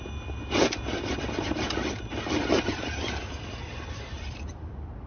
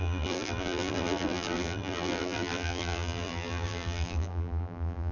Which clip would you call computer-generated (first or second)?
second